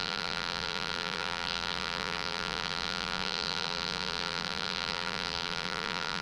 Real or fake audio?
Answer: fake